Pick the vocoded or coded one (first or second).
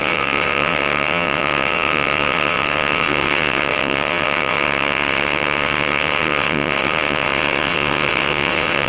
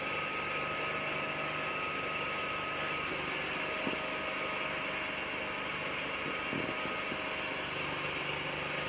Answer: first